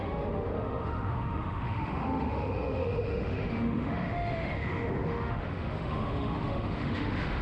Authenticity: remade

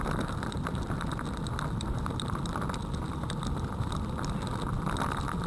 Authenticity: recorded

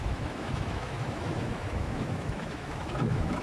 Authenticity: remade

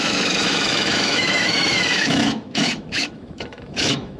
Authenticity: remade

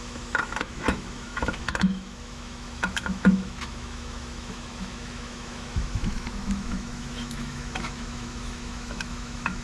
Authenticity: remade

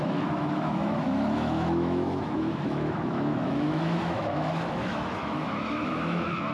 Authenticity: remade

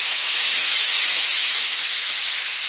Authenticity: remade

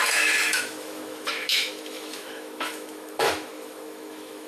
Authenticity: remade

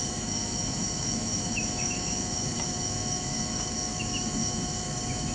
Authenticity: remade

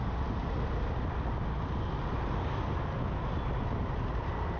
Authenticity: recorded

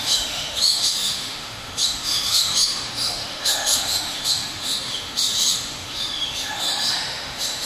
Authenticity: remade